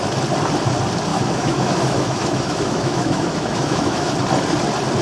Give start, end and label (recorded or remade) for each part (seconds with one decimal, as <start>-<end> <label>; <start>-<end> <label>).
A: 0.0-1.1 recorded; 1.1-4.1 remade; 4.1-5.0 recorded